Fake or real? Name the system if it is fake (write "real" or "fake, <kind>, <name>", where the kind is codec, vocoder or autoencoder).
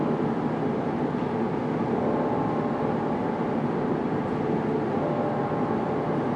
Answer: real